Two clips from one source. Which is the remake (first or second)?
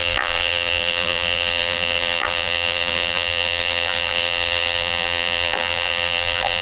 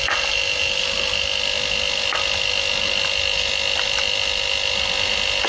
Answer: first